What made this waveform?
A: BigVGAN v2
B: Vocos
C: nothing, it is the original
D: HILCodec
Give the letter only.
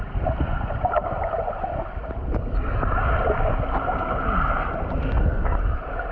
C